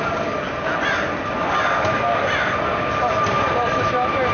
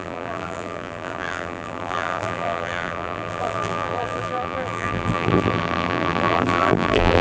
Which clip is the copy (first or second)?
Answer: second